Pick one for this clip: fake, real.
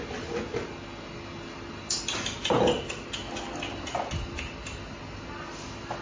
real